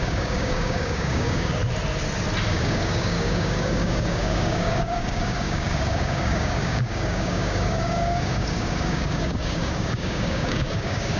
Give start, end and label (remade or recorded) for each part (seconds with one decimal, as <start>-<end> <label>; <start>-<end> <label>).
0.0-1.6 remade; 1.6-2.5 recorded; 2.5-11.2 remade